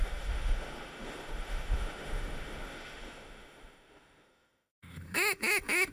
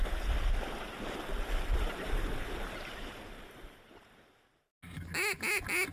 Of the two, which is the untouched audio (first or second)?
second